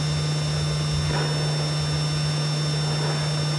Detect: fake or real real